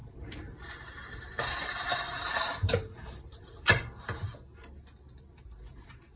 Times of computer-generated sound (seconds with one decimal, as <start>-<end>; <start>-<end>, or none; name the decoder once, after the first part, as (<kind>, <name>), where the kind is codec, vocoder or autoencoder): 0.0-3.7 (vocoder, BigVGAN v2)